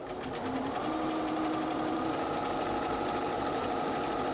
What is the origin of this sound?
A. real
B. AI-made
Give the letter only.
A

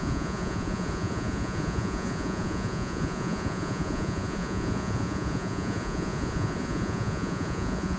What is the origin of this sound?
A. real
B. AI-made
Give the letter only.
B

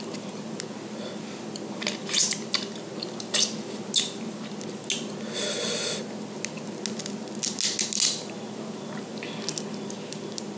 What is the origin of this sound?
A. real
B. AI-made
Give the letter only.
A